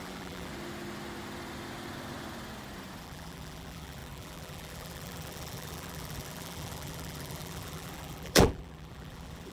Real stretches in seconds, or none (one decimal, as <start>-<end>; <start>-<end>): 0.5-3.0